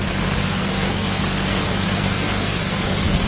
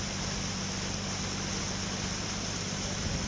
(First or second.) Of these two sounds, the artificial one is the first